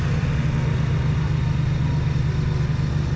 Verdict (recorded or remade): recorded